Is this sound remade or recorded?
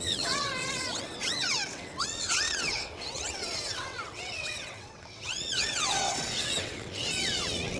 remade